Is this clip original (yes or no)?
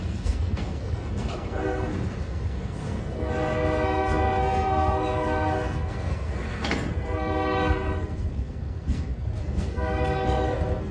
no